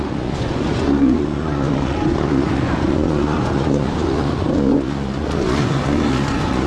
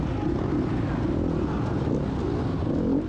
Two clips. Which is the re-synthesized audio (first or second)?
first